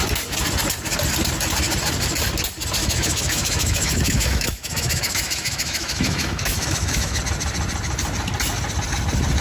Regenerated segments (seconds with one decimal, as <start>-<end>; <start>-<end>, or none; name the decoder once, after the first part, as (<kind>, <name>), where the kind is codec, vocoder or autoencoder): 2.8-7.2 (autoencoder, DAC-VAE)